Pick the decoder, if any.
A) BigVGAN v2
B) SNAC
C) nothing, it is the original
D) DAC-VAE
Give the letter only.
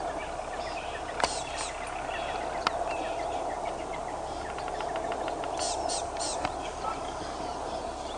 C